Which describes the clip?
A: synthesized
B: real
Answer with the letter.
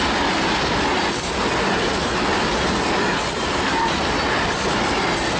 B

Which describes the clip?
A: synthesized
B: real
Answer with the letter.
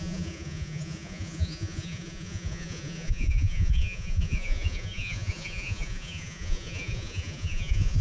A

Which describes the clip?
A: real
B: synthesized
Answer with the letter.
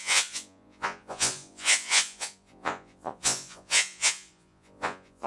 B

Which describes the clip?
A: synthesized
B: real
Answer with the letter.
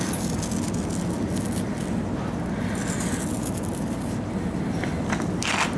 B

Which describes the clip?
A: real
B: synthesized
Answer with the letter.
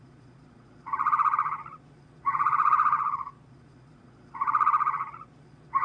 B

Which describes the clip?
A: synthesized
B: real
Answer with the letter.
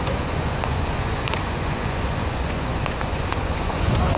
A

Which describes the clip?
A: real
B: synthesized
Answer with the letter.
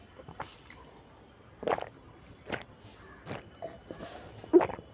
A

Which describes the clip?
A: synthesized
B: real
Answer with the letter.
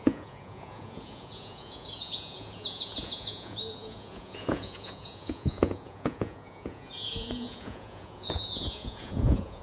A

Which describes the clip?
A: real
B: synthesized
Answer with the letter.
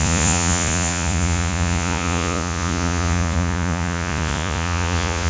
B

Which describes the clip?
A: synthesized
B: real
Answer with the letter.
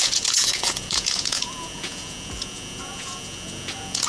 A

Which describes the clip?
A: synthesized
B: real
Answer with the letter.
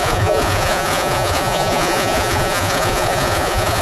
A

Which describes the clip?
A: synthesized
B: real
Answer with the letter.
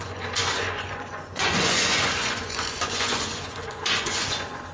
A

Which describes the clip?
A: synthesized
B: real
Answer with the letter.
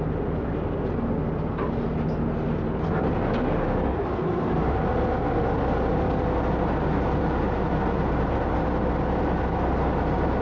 B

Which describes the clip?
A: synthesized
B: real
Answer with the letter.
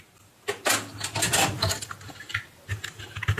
B